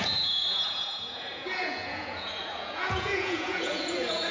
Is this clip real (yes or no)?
no